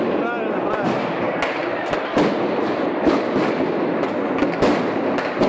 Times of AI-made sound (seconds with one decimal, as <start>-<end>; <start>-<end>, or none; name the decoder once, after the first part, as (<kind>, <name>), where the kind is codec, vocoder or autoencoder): none